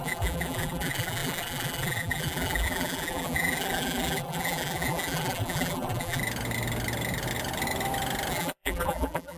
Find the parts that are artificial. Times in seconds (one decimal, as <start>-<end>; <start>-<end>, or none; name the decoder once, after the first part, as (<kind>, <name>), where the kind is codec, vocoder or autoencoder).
0.0-6.2 (vocoder, BigVGAN v2); 8.3-9.4